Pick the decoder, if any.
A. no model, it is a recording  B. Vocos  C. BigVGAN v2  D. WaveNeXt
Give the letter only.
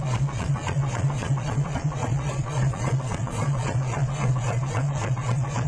B